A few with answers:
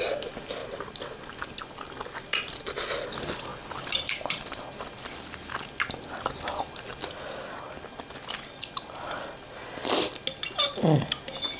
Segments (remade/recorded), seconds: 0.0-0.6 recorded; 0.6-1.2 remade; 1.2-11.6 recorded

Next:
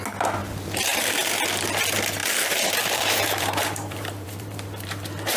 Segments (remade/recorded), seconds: 0.0-0.4 recorded; 0.4-1.3 remade; 1.3-2.2 recorded; 2.2-5.4 remade

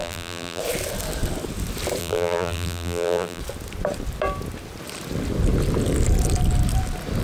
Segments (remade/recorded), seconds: 0.0-0.6 remade; 0.6-2.0 recorded; 2.0-3.4 remade; 3.4-7.2 recorded

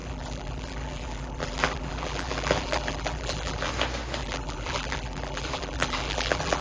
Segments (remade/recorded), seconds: 0.0-3.7 remade; 3.7-4.2 recorded; 4.2-6.6 remade